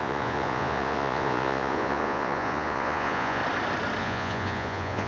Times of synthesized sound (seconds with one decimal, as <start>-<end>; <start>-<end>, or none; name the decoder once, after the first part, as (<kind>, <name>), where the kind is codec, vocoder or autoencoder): 0.0-3.4 (vocoder, Vocos); 4.0-5.1